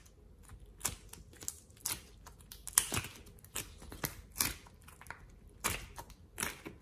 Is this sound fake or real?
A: real